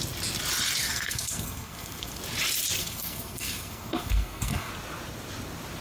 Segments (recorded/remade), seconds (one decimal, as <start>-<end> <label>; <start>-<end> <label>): 0.0-0.8 recorded; 0.8-2.2 remade; 2.2-2.8 recorded; 2.8-4.7 remade; 4.7-5.8 recorded